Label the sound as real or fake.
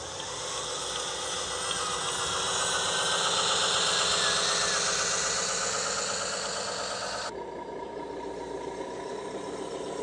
real